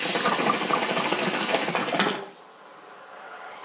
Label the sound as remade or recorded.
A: recorded